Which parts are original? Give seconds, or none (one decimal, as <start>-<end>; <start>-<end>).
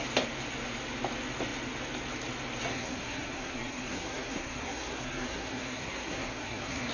0.0-2.7